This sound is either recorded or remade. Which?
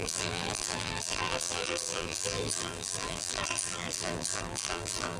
remade